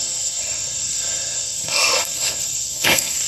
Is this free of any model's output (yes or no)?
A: no